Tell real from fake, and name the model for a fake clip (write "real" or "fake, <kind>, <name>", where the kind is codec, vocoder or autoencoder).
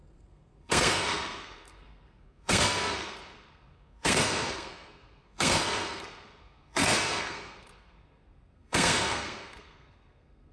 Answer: fake, codec, SNAC